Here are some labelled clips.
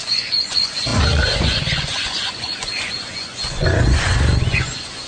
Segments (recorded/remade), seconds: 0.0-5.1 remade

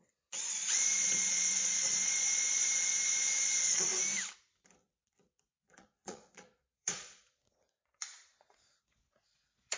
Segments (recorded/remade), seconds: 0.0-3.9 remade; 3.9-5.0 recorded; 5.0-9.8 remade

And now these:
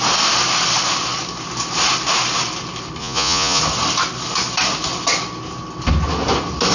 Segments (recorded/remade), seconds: 0.0-3.0 recorded; 3.0-3.6 remade; 3.6-6.7 recorded